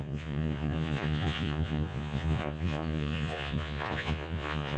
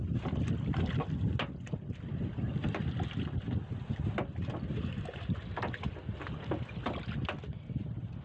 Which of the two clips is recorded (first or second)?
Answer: second